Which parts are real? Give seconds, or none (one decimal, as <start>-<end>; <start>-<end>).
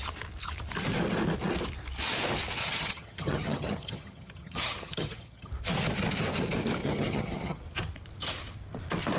0.0-2.6; 5.5-6.8; 7.6-9.2